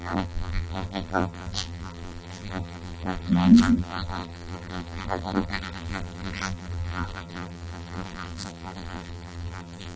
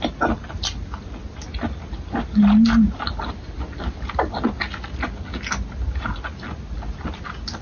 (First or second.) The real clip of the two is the second